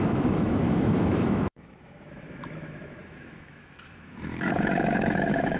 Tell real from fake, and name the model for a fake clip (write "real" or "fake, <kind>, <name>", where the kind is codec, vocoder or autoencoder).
fake, autoencoder, DAC-VAE